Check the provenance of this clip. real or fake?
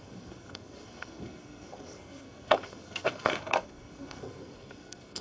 fake